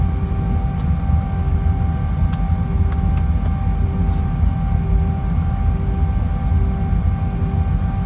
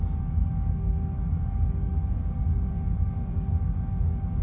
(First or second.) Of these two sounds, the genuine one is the first